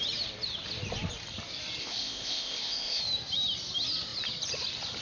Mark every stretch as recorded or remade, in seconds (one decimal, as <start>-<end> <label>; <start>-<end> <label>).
0.0-1.8 recorded; 1.8-3.0 remade; 3.0-5.0 recorded